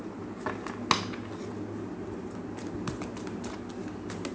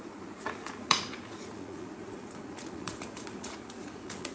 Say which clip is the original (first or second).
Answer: first